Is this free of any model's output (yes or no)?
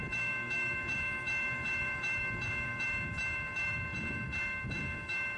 no